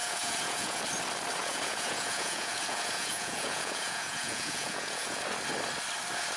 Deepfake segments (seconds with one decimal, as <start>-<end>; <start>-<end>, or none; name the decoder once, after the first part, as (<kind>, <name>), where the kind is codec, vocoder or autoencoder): 0.0-0.8 (vocoder, Vocos); 1.4-5.2